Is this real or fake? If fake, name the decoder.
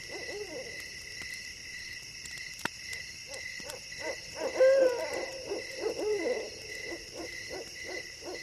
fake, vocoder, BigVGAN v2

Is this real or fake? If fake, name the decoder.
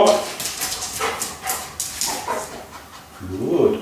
real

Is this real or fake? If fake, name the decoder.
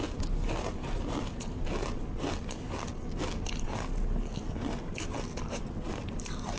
real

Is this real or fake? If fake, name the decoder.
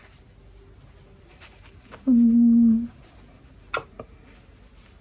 real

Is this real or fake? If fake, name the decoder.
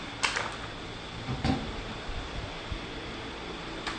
real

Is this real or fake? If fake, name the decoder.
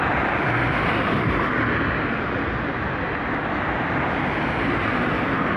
real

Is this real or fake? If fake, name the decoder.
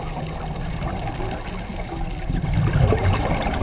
real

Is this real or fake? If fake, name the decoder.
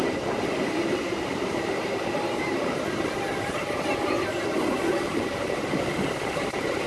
fake, vocoder, BigVGAN v2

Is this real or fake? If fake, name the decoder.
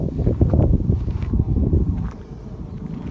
fake, vocoder, BigVGAN v2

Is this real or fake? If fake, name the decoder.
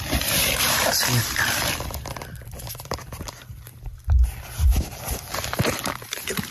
fake, vocoder, BigVGAN v2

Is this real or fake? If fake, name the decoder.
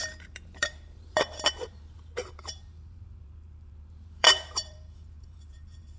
fake, vocoder, BigVGAN v2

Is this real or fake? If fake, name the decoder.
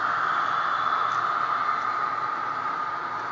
real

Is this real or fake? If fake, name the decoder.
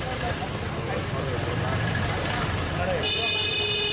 real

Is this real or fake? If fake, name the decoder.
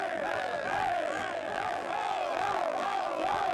fake, vocoder, BigVGAN v2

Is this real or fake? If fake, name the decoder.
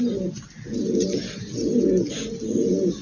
real